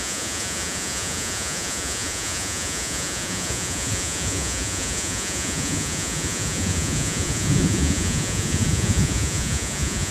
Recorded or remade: remade